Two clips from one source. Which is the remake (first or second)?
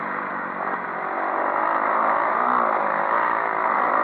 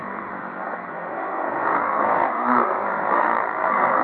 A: second